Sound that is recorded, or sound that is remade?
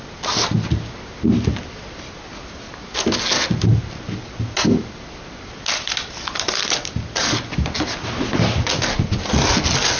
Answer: recorded